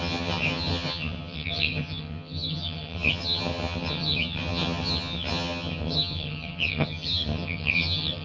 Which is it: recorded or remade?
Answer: remade